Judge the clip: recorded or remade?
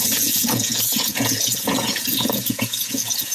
remade